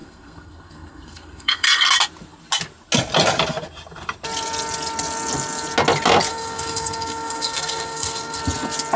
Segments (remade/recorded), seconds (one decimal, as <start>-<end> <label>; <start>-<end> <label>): 0.0-1.9 remade; 1.9-6.3 recorded; 6.3-8.4 remade; 8.4-9.0 recorded